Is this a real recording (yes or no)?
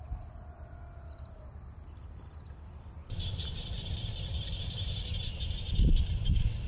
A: yes